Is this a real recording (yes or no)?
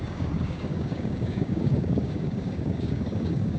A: no